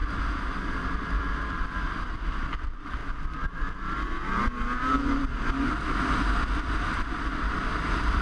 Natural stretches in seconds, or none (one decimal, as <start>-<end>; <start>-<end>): none